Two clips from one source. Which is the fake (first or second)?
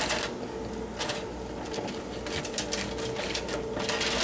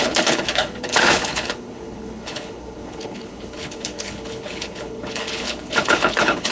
second